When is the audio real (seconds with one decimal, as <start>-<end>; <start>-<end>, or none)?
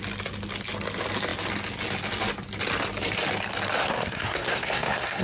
0.0-3.8